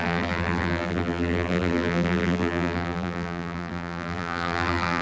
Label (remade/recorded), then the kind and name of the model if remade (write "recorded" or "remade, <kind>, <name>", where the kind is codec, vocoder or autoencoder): remade, vocoder, BigVGAN v2